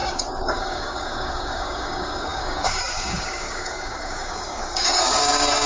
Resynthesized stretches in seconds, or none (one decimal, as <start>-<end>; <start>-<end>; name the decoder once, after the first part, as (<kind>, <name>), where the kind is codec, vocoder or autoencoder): 0.0-5.7 (codec, DAC)